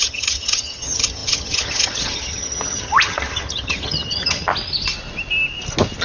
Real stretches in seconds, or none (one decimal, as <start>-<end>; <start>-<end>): 4.5-6.0

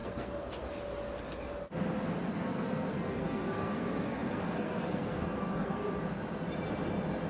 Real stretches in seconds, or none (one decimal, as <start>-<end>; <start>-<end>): 0.7-2.3; 5.9-7.3

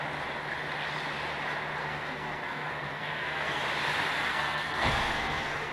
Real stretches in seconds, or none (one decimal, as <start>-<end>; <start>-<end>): 0.0-1.8; 3.6-4.3

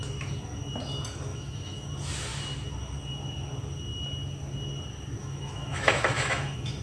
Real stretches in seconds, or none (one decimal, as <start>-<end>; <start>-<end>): 0.0-1.3; 1.9-5.2

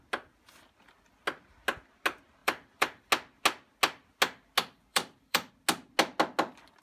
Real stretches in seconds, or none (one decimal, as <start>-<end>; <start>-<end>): 0.0-2.4; 3.1-4.9; 5.5-6.8